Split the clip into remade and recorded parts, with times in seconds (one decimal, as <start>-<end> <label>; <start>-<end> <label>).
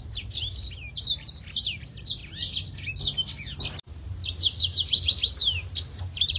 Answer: 0.0-2.2 remade; 2.2-3.8 recorded; 3.8-4.2 remade; 4.2-6.0 recorded; 6.0-6.4 remade